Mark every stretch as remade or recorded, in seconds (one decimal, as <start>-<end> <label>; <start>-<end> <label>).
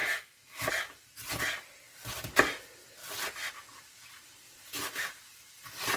0.0-0.7 remade; 0.7-6.0 recorded